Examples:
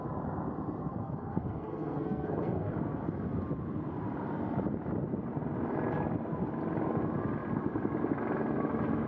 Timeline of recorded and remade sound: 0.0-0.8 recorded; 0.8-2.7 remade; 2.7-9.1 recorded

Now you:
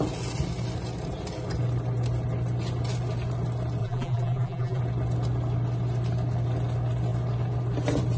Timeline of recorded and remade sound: 0.0-3.8 recorded; 3.8-4.8 remade; 4.8-8.2 recorded

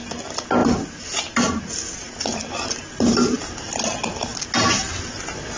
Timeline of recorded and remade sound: 0.0-5.6 recorded

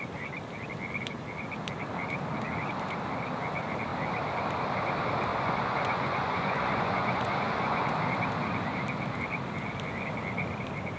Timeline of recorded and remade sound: 0.0-5.3 recorded; 5.3-7.9 remade; 7.9-11.0 recorded

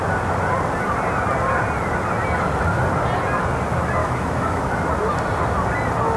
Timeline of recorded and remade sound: 0.0-4.0 recorded; 4.0-4.6 remade; 4.6-6.2 recorded

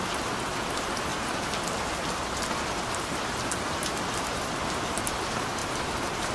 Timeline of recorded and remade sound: 0.0-6.3 recorded

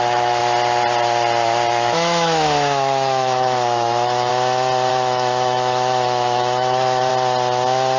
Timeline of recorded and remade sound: 0.0-0.4 remade; 0.4-1.7 recorded; 1.7-4.3 remade; 4.3-4.9 recorded; 4.9-7.1 remade; 7.1-8.0 recorded

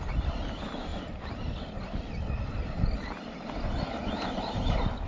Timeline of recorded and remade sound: 0.0-5.1 recorded